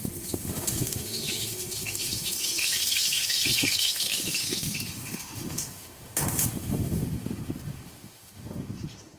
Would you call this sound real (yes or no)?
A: no